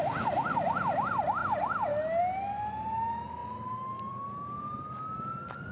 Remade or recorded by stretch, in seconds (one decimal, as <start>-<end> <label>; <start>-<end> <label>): 0.0-5.7 recorded